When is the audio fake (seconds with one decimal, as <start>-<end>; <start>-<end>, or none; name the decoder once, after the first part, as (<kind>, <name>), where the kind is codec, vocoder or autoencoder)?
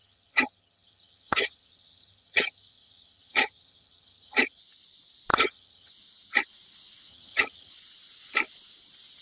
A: 0.0-4.6 (vocoder, HiFi-GAN); 5.3-5.9; 7.1-7.7